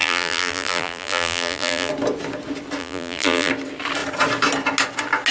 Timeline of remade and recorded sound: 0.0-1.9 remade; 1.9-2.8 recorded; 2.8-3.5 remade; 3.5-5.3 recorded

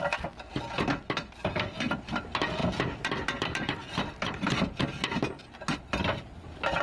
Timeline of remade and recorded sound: 0.0-2.6 recorded; 2.6-4.5 remade; 4.5-6.8 recorded

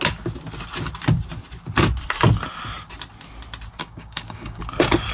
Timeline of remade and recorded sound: 0.0-3.8 recorded; 3.8-4.6 remade; 4.6-5.1 recorded